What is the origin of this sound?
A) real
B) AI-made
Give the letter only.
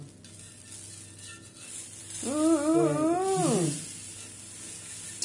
A